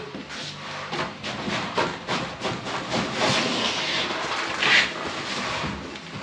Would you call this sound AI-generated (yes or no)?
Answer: no